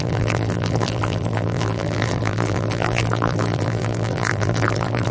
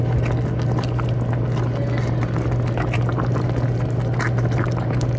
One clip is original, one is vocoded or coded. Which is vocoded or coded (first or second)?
first